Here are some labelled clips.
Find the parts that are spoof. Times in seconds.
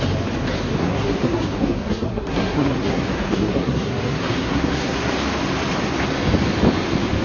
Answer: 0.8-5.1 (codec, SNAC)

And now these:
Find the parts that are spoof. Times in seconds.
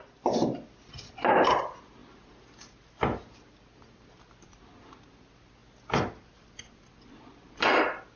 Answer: none